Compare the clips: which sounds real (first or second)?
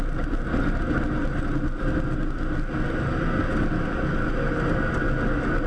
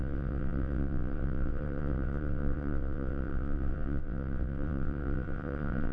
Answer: first